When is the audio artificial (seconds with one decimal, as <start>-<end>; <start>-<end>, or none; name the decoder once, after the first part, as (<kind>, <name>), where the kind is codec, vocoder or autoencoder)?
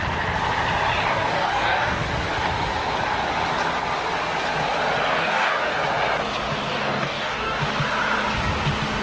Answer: 1.1-2.0 (codec, DAC); 5.1-5.7; 6.7-7.6